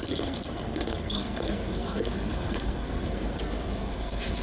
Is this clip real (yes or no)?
no